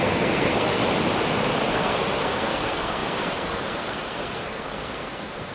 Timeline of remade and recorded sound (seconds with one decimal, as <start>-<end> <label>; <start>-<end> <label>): 0.0-0.8 remade; 0.8-1.7 recorded; 1.7-5.5 remade